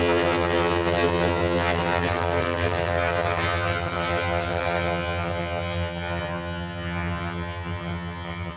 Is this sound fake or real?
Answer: fake